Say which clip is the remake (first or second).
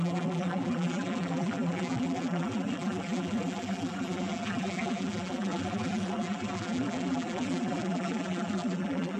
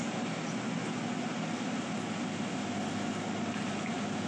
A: first